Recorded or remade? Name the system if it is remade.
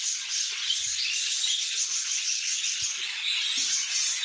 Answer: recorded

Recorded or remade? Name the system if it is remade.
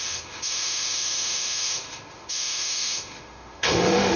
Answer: remade, autoencoder, DAC-VAE